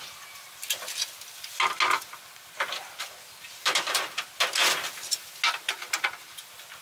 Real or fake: real